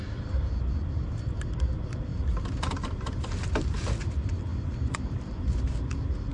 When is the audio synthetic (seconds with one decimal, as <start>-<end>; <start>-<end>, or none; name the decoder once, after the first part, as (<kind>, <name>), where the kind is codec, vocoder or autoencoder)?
none